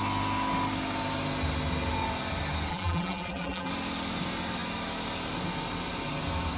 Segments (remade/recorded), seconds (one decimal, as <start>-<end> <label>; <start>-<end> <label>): 0.0-2.7 recorded; 2.7-3.7 remade; 3.7-6.6 recorded